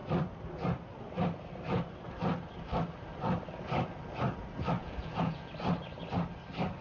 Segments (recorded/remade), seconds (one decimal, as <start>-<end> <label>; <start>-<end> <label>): 0.0-4.8 recorded; 4.8-5.5 remade; 5.5-6.8 recorded